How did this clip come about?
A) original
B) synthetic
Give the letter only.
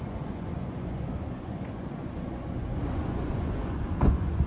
B